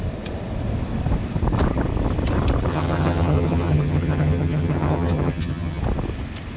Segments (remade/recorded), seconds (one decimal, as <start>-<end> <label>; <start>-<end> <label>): 0.0-2.7 recorded; 2.7-5.8 remade; 5.8-6.6 recorded